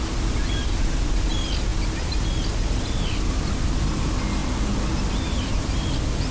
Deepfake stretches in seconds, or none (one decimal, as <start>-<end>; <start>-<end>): none